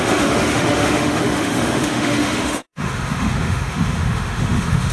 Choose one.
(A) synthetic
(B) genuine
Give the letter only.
A